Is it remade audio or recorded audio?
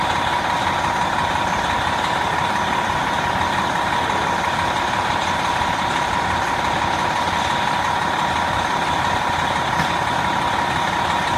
remade